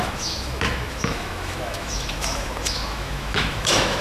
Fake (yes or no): yes